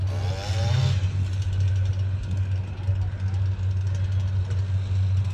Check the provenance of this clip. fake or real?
real